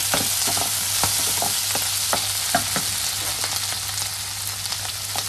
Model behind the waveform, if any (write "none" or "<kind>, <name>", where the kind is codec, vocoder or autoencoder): none